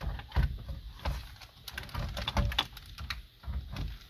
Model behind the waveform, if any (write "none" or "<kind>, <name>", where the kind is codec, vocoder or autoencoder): none